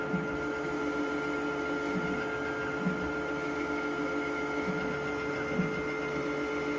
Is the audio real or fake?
real